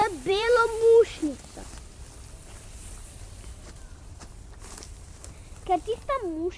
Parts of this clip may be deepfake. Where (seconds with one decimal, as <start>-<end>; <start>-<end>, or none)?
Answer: 0.0-0.7; 1.2-5.2